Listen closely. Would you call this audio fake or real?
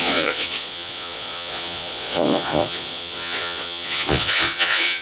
fake